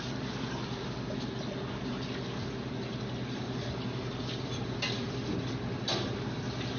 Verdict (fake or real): real